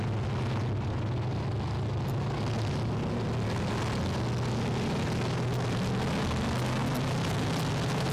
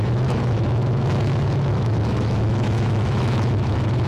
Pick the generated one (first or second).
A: second